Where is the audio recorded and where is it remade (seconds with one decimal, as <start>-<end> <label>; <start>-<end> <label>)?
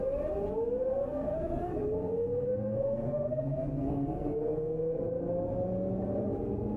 0.0-0.9 recorded; 0.9-5.0 remade; 5.0-6.8 recorded